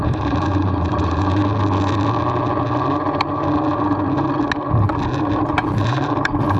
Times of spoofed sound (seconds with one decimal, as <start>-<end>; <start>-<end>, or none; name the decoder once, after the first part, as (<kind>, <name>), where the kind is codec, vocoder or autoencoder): 0.0-1.4 (vocoder, BigVGAN v2); 5.4-6.6